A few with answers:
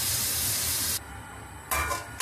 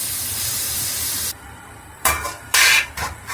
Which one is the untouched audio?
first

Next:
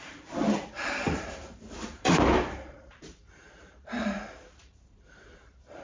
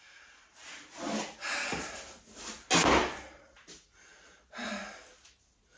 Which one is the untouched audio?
second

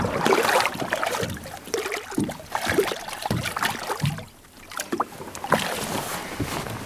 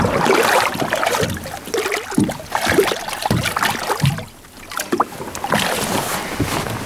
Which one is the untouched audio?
second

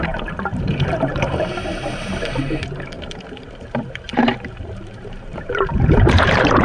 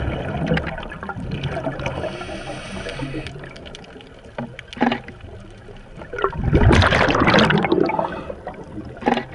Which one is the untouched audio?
second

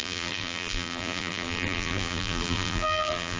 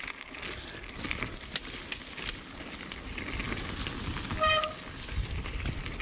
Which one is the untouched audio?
second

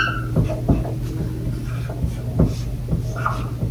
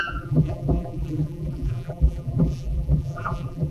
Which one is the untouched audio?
first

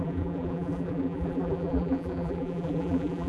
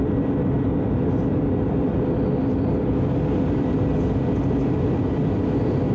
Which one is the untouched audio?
second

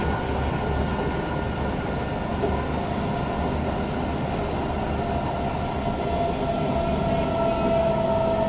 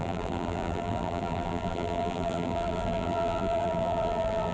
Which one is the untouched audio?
first